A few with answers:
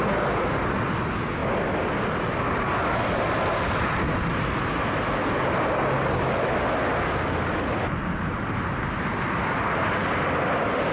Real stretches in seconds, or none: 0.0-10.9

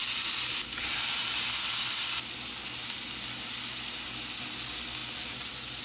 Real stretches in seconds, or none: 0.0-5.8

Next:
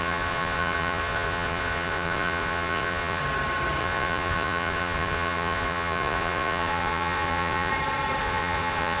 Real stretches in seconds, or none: 3.2-3.8; 7.7-8.2

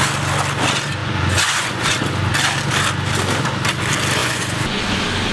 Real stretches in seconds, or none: 0.0-1.0; 1.8-4.2; 4.8-5.3

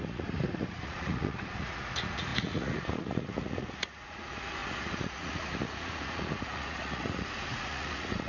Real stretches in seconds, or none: none

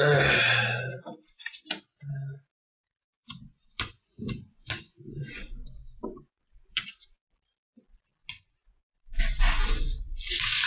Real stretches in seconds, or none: 0.0-2.7; 7.2-8.2; 9.2-10.7

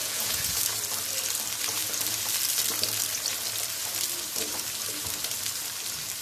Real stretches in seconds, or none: 0.6-6.2

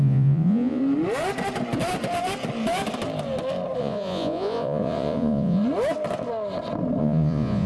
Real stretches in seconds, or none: 0.8-3.8; 5.6-7.0